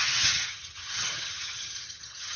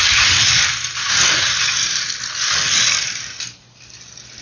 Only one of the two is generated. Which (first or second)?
first